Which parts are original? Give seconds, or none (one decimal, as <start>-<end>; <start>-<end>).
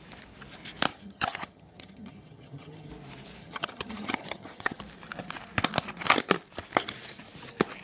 0.0-0.9; 2.9-3.4; 4.8-7.8